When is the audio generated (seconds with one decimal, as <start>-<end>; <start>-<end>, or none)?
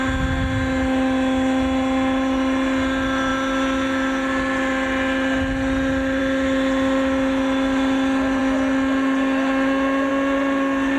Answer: none